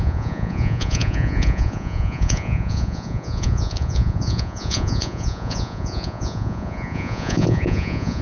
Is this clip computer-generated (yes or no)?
yes